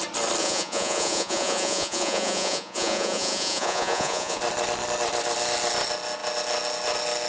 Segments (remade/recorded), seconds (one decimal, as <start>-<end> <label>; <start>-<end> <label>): 0.0-0.4 recorded; 0.4-4.4 remade; 4.4-7.3 recorded